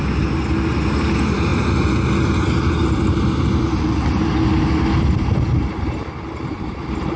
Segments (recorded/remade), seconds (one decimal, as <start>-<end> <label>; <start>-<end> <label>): 0.0-7.2 recorded